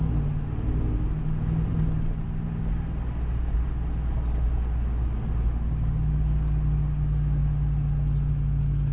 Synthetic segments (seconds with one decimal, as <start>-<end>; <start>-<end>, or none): none